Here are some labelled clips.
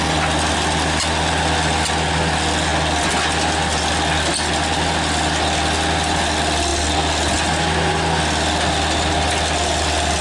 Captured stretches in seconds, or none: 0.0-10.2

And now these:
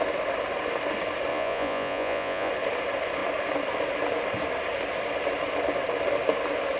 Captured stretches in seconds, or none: 0.0-1.3; 2.5-6.8